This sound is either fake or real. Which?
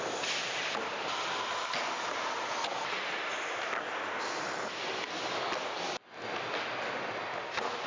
real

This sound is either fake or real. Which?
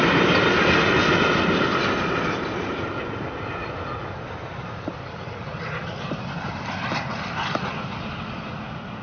real